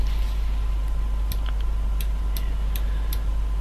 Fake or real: real